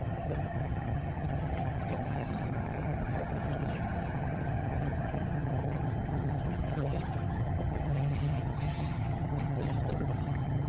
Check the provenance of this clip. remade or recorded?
remade